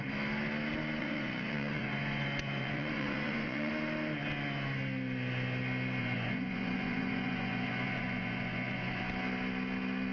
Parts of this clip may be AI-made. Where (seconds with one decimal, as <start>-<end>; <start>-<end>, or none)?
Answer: 1.0-3.7; 6.0-9.0